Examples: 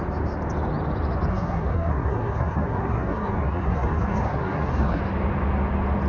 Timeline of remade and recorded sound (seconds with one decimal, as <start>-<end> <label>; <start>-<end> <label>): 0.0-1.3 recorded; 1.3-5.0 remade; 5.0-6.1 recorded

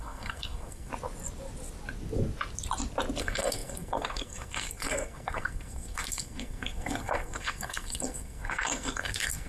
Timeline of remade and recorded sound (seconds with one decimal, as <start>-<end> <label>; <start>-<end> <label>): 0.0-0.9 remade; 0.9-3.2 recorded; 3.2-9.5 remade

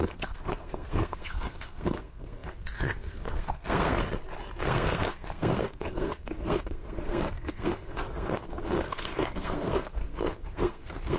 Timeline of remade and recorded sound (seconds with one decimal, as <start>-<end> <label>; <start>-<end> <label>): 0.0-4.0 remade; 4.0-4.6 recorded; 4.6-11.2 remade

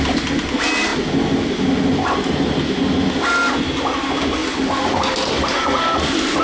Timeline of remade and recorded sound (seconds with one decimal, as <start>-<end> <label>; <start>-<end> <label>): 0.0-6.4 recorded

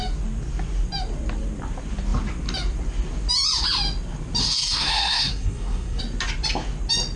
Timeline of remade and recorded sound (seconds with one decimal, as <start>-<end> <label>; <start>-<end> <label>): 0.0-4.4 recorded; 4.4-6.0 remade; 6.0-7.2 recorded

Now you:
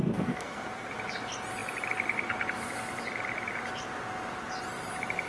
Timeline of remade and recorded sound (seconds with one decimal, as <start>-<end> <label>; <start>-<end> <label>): 0.0-0.9 remade; 0.9-5.3 recorded

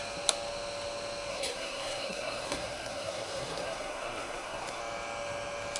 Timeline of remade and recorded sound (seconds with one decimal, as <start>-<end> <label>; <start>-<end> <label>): 0.0-1.3 recorded; 1.3-4.8 remade; 4.8-5.8 recorded

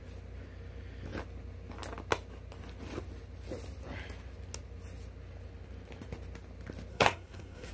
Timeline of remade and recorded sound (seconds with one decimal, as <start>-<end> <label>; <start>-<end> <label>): 0.0-6.9 recorded; 6.9-7.7 remade